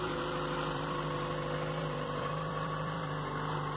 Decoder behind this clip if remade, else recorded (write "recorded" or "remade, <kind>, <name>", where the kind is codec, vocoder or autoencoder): remade, vocoder, BigVGAN v2